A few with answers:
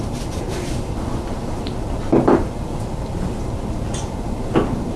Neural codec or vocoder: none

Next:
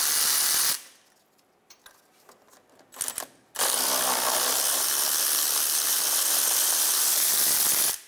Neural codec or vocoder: none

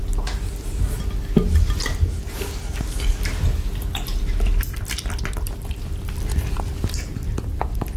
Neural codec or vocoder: none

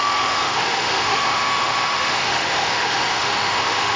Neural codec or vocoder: autoencoder, DAC-VAE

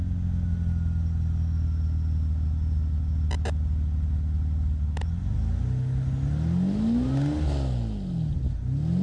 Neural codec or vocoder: none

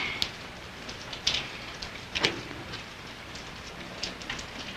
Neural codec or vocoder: none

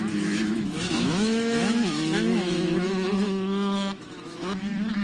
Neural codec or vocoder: autoencoder, DAC-VAE